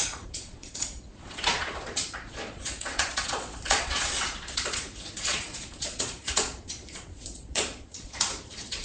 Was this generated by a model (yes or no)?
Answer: yes